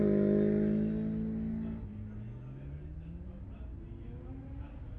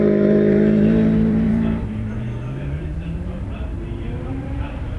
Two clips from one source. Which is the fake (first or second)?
second